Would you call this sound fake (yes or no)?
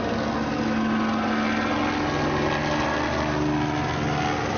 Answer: no